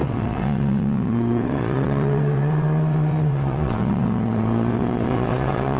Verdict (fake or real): fake